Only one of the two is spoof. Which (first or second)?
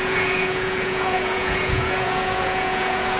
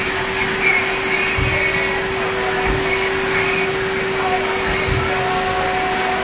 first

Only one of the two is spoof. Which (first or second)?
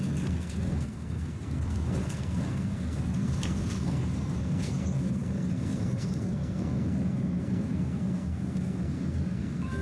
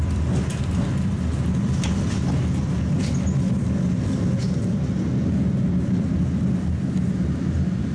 first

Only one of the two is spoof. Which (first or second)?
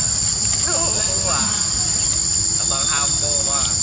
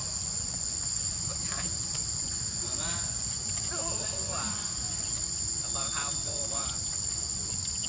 second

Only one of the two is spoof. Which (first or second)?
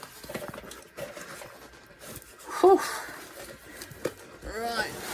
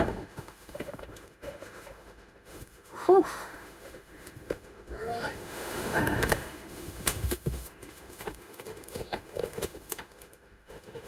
second